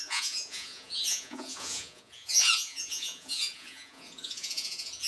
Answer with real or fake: fake